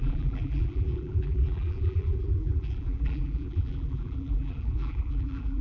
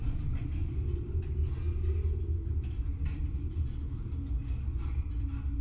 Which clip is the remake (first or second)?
first